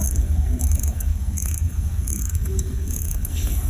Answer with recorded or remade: remade